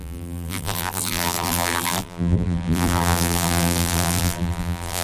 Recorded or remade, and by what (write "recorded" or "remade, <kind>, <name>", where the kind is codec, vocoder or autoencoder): remade, vocoder, BigVGAN v2